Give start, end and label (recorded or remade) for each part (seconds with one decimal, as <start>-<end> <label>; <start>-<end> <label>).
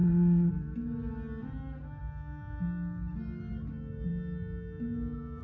0.0-0.5 remade; 0.5-5.4 recorded